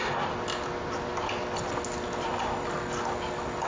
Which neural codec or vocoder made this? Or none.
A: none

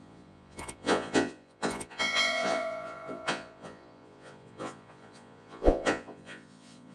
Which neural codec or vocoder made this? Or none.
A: vocoder, Vocos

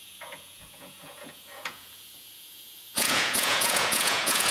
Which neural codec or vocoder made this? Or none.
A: vocoder, Vocos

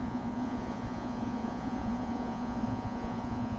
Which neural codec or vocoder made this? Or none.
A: vocoder, Vocos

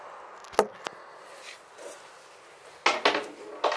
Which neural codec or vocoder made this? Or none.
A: none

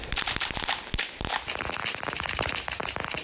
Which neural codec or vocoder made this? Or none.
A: none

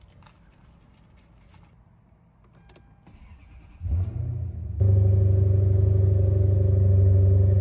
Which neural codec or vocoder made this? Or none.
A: none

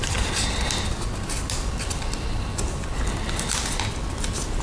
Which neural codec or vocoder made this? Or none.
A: none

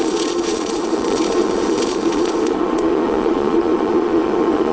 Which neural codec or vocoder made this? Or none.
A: vocoder, Vocos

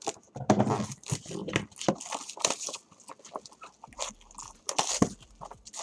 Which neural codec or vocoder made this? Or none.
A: none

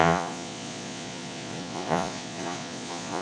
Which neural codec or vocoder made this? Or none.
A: vocoder, Vocos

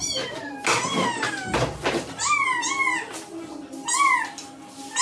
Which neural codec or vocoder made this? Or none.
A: none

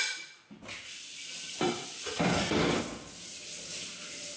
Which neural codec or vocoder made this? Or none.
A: none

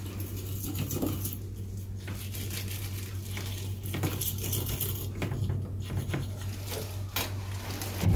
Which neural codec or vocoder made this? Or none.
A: none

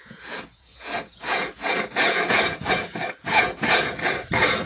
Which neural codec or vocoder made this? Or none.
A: vocoder, Vocos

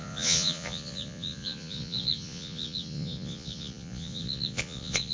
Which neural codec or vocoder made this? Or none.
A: vocoder, Vocos